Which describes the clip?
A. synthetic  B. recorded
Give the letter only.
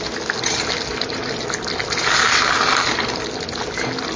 B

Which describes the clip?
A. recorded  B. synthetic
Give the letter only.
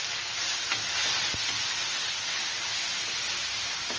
A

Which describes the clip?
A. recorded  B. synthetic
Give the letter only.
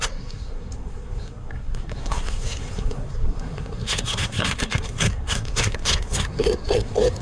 B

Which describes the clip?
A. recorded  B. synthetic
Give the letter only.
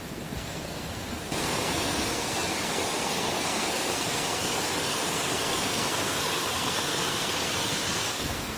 B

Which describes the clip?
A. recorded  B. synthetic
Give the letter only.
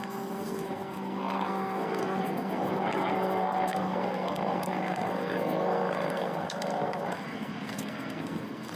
B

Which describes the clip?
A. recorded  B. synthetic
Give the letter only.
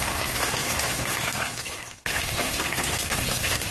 B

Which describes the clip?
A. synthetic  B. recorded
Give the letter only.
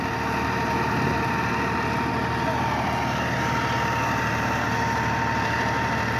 B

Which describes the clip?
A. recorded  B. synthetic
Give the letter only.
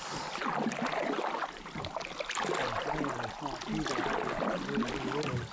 A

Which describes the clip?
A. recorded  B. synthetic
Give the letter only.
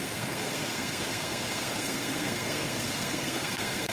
B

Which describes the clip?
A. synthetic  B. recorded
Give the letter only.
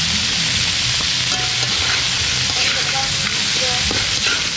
B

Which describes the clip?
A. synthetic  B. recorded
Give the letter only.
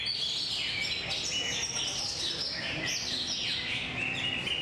B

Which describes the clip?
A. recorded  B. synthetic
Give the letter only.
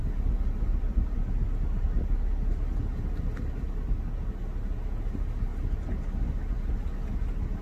A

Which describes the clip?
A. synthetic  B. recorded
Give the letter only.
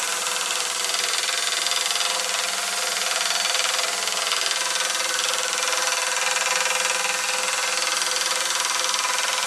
B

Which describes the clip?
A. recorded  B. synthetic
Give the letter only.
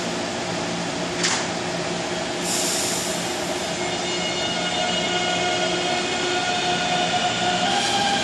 A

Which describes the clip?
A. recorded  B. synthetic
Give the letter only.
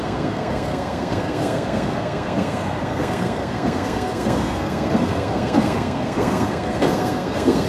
B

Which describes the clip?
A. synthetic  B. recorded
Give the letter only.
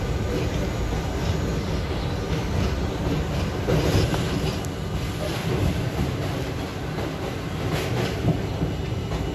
B